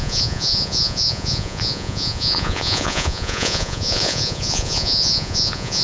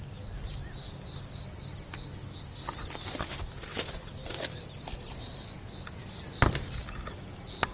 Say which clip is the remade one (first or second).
first